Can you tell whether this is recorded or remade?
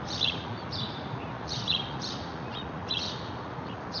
remade